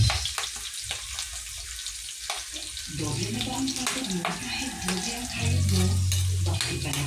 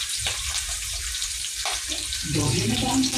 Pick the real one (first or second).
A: first